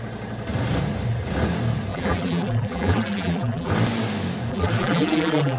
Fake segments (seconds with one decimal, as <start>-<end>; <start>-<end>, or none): 1.9-3.7; 4.5-5.6